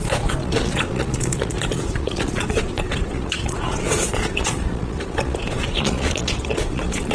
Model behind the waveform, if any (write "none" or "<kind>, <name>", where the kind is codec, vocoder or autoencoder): vocoder, Vocos